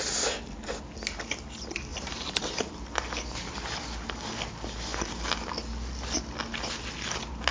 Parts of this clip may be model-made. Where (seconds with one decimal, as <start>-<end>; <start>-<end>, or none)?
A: 1.9-2.5